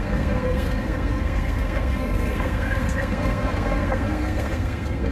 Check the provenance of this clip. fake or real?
fake